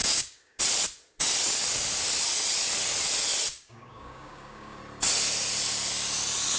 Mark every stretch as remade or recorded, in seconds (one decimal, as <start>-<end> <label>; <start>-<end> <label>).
0.0-0.6 remade; 0.6-3.5 recorded; 3.5-4.8 remade; 4.8-6.6 recorded